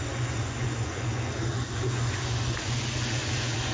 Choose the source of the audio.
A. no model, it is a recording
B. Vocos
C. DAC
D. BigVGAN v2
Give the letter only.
B